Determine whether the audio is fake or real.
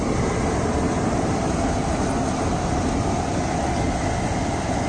real